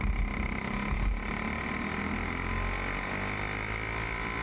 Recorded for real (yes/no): yes